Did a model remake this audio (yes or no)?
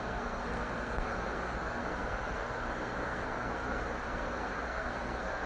yes